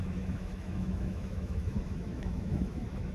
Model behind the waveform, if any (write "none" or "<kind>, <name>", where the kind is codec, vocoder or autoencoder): autoencoder, DAC-VAE